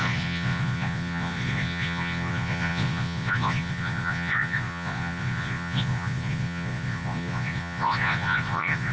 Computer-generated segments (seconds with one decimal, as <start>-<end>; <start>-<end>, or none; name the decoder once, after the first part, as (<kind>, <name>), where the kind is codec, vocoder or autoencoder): 0.0-8.9 (vocoder, Vocos)

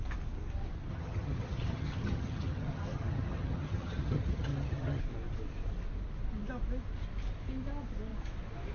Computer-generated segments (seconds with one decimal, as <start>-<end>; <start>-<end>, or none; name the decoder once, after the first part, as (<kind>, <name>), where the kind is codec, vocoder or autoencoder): 0.9-5.0 (vocoder, HiFi-GAN)

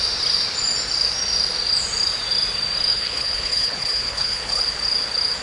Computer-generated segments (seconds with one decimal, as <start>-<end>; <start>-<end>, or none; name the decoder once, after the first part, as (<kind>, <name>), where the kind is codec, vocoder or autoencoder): 2.9-4.6 (codec, HILCodec)

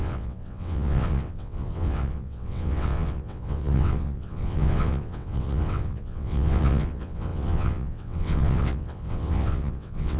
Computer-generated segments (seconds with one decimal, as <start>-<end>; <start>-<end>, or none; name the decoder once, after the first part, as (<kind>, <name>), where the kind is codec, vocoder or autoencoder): 0.0-10.2 (vocoder, WaveNeXt)

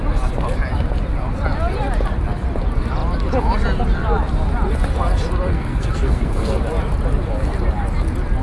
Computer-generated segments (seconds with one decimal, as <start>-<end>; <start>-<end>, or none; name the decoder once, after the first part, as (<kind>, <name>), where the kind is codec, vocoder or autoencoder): 5.5-6.6 (codec, SNAC)

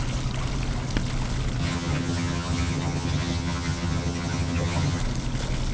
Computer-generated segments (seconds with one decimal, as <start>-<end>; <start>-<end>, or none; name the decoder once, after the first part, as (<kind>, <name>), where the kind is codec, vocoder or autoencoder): 1.6-5.0 (vocoder, HiFi-GAN)

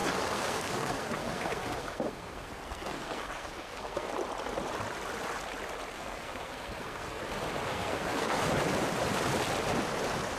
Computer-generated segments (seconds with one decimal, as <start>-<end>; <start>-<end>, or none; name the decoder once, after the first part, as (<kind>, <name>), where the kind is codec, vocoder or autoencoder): 0.0-4.1 (codec, SNAC); 5.9-7.2; 7.7-8.4

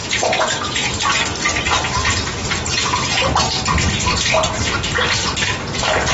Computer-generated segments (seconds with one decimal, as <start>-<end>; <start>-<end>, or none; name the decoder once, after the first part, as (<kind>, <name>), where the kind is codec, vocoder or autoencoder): 0.0-0.9 (vocoder, Vocos)